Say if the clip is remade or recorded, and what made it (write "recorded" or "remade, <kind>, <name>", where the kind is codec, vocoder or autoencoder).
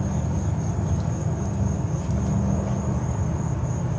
recorded